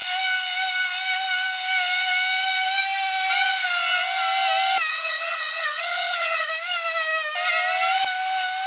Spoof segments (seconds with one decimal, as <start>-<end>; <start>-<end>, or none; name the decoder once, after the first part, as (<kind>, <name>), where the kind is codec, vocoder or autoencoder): 4.9-6.5 (vocoder, HiFi-GAN)